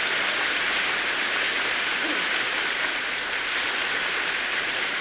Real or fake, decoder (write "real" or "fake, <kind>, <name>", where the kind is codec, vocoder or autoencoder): fake, vocoder, BigVGAN v2